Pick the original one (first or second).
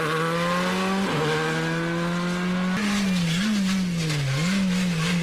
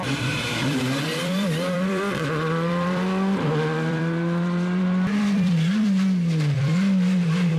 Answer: first